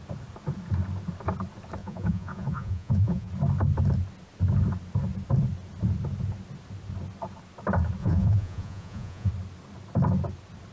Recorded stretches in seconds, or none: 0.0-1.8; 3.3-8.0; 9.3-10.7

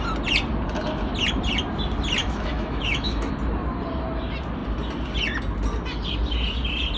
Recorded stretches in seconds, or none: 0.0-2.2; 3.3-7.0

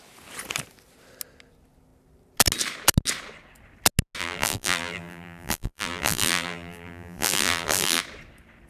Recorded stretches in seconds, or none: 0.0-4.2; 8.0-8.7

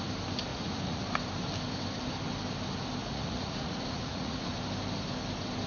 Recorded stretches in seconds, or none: 0.0-0.5; 1.0-3.0; 4.5-5.7

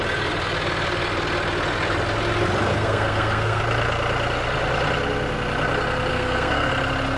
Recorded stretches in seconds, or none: 0.0-2.7; 3.6-6.1; 6.7-7.2